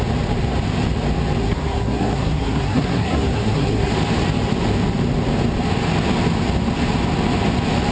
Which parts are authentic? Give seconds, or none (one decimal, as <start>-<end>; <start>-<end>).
0.0-1.4; 3.9-7.9